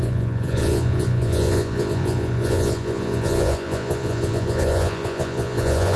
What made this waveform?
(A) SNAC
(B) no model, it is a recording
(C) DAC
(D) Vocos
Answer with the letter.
D